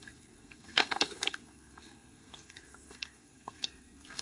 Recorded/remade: remade